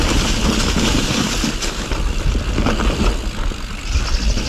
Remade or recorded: recorded